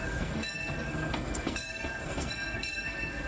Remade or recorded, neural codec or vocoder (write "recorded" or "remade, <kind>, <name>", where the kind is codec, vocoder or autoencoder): remade, codec, SNAC